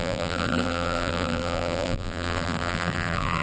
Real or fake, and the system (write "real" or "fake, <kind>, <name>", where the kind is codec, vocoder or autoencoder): fake, vocoder, BigVGAN v2